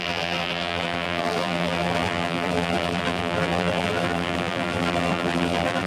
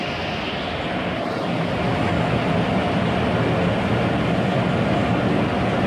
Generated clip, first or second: first